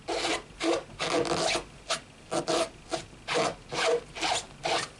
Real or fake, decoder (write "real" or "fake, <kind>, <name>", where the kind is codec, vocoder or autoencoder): real